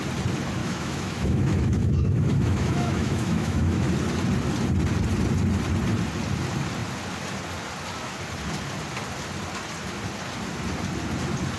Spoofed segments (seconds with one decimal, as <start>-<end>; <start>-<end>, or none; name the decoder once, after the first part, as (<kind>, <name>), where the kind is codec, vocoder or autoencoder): 0.6-3.9 (autoencoder, DAC-VAE)